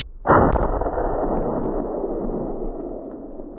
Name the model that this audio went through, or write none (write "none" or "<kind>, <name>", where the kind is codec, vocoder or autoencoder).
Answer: none